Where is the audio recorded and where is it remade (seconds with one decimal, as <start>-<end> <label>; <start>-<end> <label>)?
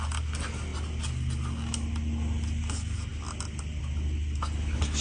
0.0-5.0 recorded